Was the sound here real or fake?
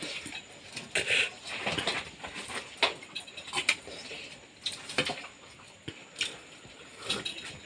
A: real